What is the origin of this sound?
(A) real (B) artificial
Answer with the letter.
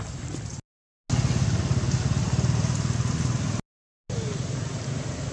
A